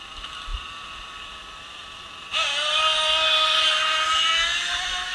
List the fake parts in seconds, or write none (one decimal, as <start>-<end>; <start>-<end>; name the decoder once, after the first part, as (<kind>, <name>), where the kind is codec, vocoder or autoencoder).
none